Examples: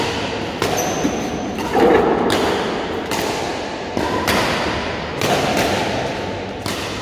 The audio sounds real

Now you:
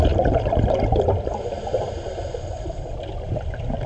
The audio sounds fake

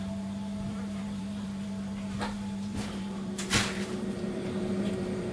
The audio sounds fake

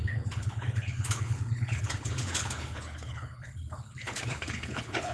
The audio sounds fake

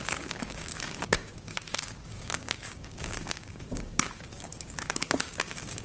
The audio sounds fake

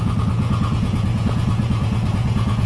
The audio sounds fake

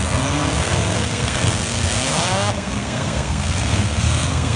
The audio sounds fake